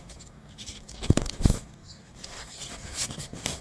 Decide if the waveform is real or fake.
fake